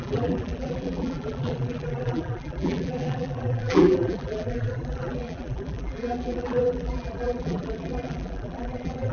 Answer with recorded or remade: remade